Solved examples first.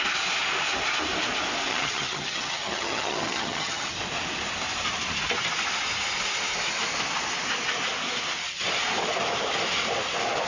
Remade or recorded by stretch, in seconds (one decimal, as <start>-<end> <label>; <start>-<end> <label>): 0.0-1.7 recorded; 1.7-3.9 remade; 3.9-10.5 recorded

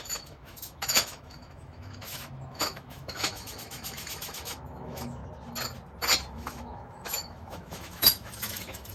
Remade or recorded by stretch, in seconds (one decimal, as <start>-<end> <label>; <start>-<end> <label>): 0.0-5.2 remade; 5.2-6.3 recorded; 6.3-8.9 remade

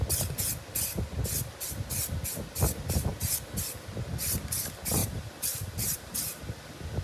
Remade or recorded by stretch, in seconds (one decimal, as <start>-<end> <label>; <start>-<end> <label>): 0.0-5.0 recorded; 5.0-6.4 remade; 6.4-7.0 recorded